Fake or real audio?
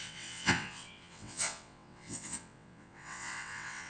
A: fake